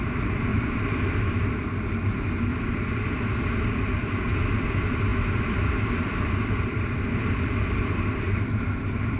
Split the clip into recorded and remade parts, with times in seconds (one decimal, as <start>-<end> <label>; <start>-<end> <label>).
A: 0.0-0.5 recorded; 0.5-1.2 remade; 1.2-2.5 recorded; 2.5-3.4 remade; 3.4-5.1 recorded; 5.1-6.9 remade; 6.9-9.2 recorded